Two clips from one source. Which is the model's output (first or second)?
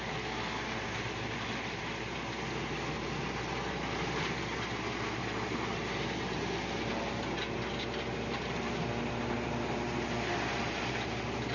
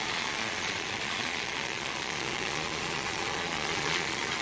second